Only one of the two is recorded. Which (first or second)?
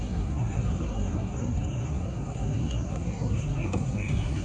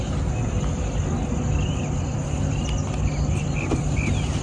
second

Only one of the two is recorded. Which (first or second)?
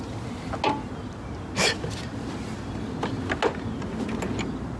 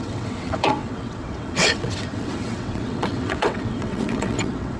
first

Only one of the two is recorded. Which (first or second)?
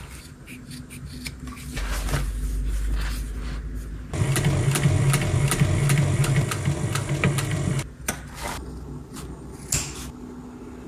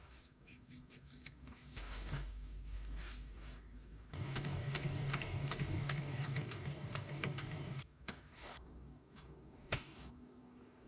first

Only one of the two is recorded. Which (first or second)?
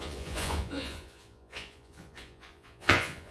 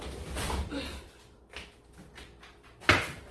second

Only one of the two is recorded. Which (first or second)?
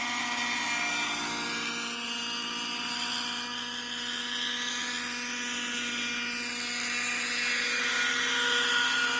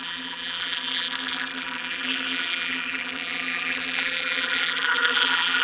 first